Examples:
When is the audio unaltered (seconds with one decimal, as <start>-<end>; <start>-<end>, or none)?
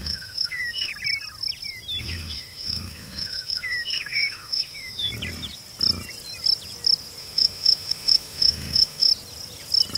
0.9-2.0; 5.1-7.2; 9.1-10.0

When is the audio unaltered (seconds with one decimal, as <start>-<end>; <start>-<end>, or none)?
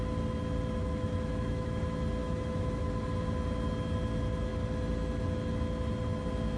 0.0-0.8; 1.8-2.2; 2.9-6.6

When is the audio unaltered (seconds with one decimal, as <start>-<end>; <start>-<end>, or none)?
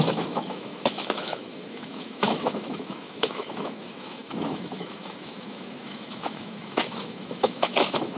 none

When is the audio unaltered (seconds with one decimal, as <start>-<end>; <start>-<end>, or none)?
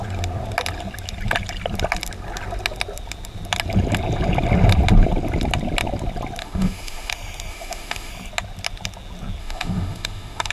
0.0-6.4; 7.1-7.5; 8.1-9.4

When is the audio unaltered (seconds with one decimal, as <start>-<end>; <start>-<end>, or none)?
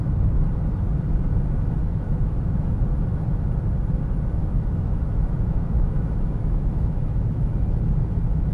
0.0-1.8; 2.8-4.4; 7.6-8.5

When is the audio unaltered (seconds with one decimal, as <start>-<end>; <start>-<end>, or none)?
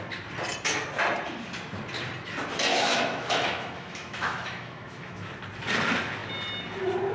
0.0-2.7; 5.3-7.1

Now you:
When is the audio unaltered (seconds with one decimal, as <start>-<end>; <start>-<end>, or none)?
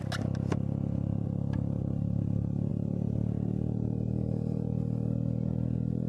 0.0-6.1